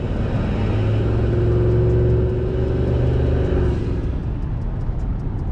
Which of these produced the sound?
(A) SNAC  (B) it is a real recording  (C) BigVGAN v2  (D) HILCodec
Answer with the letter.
B